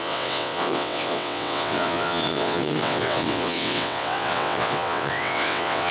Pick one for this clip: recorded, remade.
remade